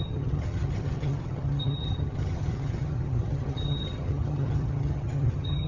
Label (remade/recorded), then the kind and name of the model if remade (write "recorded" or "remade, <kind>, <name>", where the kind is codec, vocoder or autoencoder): remade, vocoder, HiFi-GAN